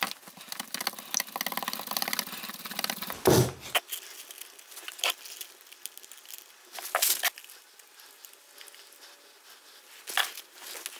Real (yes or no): yes